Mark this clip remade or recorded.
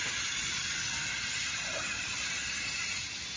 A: recorded